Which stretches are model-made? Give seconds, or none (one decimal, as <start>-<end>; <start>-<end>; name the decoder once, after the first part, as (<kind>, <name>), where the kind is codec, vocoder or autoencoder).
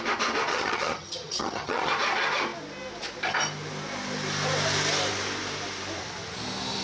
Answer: 0.5-1.9 (vocoder, HiFi-GAN)